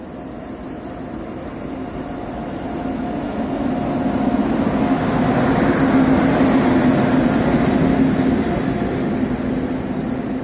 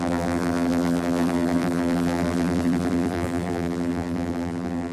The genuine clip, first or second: first